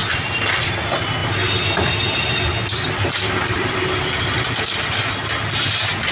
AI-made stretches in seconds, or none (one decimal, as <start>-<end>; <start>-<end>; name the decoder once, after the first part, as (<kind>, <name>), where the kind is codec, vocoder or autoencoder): 1.2-4.4 (vocoder, BigVGAN v2)